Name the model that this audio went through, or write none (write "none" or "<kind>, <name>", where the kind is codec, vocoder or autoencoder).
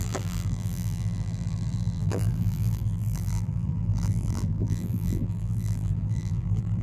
vocoder, BigVGAN v2